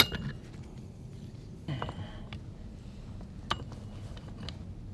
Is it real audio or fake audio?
real